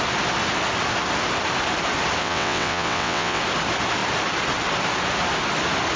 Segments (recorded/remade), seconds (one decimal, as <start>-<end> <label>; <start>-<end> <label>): 0.0-2.2 recorded; 2.2-3.4 remade; 3.4-6.0 recorded